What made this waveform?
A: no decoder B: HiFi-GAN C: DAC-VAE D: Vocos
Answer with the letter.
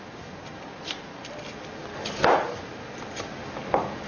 A